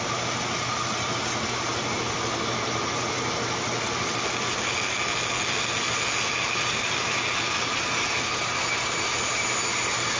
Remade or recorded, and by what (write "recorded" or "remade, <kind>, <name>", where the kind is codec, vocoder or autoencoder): recorded